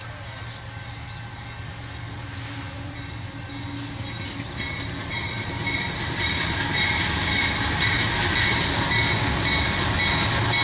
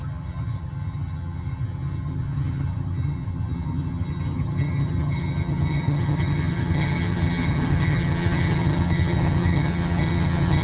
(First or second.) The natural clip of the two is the first